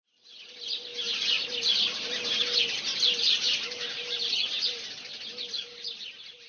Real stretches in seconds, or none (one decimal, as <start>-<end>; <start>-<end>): 0.0-6.5

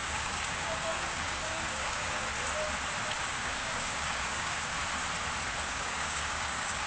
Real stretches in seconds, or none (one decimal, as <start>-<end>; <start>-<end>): 2.3-3.2; 4.8-5.7

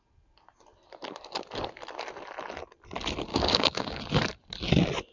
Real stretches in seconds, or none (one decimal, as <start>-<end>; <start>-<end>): 0.0-3.3; 4.0-5.1

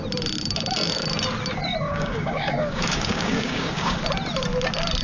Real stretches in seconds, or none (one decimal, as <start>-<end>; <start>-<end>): 0.0-1.9; 4.0-5.0

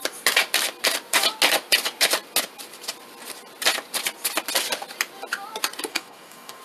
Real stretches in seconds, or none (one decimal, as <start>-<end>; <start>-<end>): 0.0-5.9